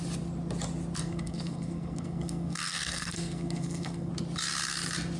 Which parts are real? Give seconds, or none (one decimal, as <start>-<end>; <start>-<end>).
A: 0.0-1.0; 4.1-5.2